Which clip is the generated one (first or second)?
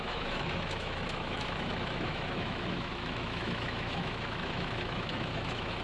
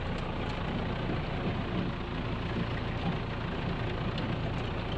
first